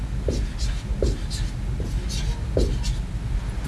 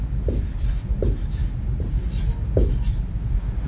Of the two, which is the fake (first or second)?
second